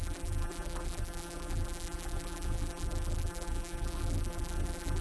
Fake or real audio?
fake